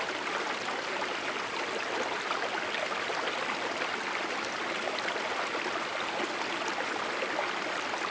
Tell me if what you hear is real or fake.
real